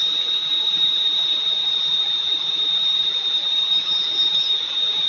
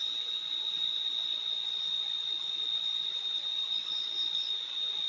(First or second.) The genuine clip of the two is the second